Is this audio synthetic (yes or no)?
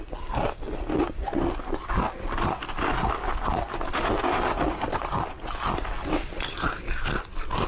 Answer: no